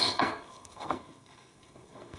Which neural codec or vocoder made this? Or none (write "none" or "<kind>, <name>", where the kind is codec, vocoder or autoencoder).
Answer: codec, SNAC